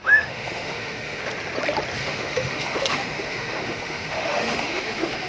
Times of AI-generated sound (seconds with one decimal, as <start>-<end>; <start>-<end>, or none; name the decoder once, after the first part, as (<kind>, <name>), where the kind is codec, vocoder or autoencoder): 0.0-1.2 (autoencoder, DAC-VAE); 2.0-5.3